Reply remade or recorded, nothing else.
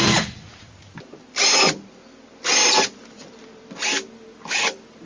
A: recorded